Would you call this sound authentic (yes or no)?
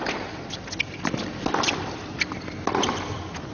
yes